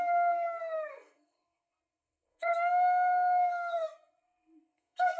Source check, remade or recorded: remade